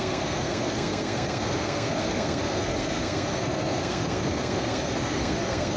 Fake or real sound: fake